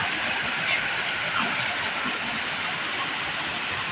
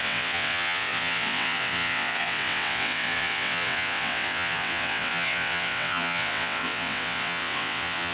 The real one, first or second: first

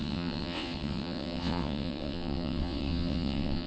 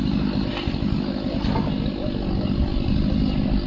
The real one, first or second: second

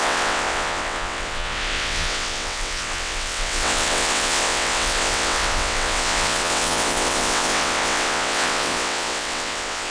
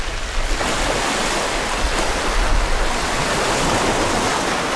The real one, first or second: second